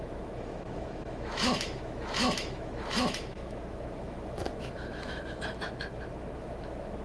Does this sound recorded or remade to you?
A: remade